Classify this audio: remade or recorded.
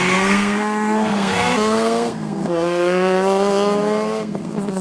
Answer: remade